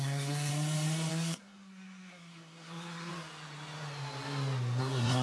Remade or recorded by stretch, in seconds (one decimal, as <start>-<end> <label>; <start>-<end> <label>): 0.0-0.5 remade; 0.5-1.1 recorded; 1.1-3.1 remade; 3.1-4.8 recorded; 4.8-5.2 remade